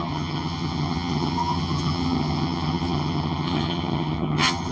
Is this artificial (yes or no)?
yes